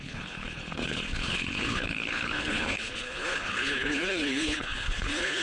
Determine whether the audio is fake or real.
fake